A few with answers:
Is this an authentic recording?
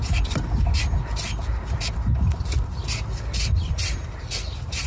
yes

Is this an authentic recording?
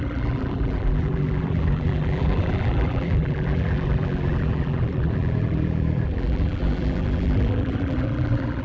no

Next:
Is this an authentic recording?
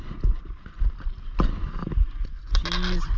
yes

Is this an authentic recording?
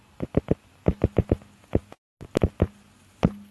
yes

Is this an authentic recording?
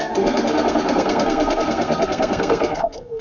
no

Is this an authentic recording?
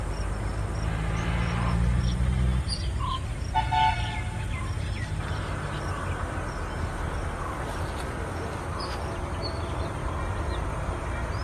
yes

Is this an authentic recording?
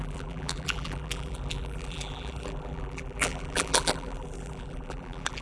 no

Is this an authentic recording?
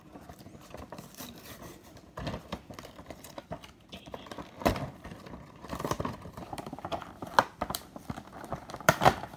no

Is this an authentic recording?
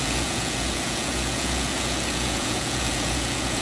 no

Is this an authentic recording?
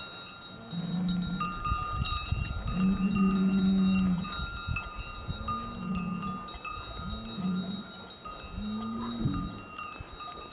yes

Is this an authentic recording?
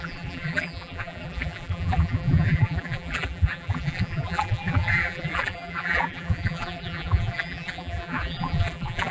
no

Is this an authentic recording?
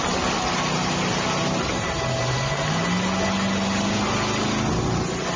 yes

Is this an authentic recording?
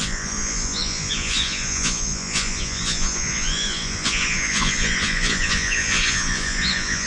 no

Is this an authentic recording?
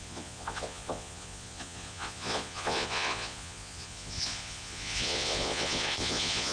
no